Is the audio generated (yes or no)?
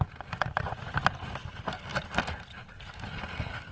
no